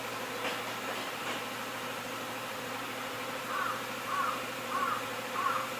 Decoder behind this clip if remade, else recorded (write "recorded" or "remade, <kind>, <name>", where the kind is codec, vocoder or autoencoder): recorded